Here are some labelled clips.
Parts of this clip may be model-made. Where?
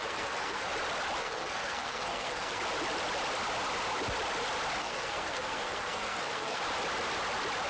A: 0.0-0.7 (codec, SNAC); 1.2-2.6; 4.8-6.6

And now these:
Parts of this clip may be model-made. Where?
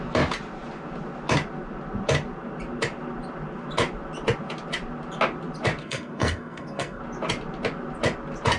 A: 5.8-7.0 (codec, SNAC)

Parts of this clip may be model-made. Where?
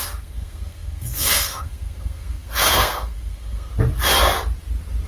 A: 0.0-3.7 (codec, SNAC)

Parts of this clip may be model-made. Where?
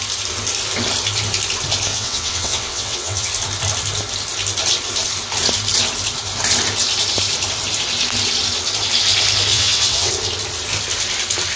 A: 1.9-3.3 (vocoder, WaveNeXt); 9.5-10.1